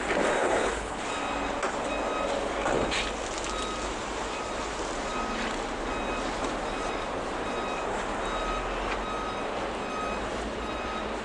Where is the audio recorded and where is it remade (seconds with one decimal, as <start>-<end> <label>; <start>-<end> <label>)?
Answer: 0.0-0.4 recorded; 0.4-1.0 remade; 1.0-11.2 recorded